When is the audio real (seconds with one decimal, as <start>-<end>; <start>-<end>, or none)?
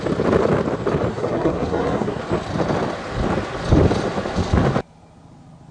0.0-1.1; 2.2-5.7